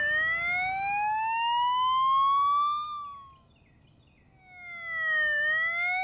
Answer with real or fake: real